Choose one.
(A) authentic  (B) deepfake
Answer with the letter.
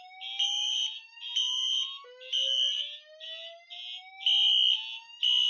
A